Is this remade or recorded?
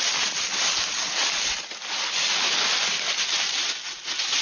recorded